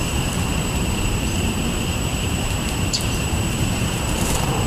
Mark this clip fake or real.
fake